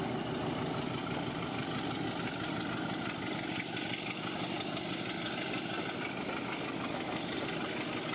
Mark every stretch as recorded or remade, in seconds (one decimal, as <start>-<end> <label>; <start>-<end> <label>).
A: 0.0-8.1 recorded